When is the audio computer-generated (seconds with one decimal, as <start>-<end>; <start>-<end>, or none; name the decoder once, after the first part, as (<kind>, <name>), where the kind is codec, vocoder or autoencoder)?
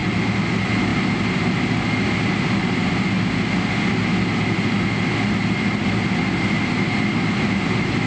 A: none